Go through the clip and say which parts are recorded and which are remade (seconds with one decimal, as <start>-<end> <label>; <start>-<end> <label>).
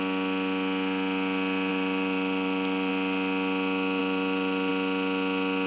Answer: 0.0-1.7 recorded; 1.7-2.9 remade; 2.9-4.0 recorded; 4.0-4.7 remade; 4.7-5.7 recorded